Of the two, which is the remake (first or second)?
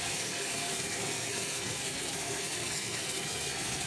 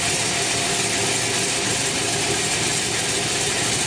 first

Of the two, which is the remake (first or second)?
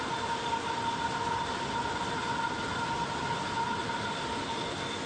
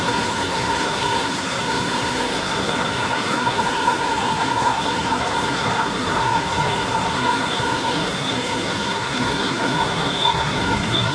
second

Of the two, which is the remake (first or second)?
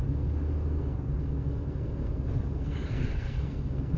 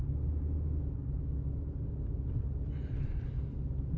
first